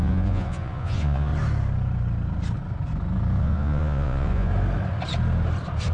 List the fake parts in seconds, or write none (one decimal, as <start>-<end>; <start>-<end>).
0.0-1.3; 3.4-4.5